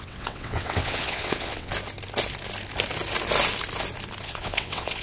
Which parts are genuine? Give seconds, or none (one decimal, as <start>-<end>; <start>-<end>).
1.7-4.2